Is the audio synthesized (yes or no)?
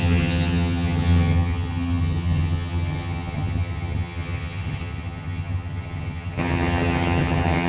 yes